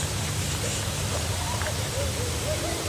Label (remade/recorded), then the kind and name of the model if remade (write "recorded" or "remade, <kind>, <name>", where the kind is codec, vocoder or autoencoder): recorded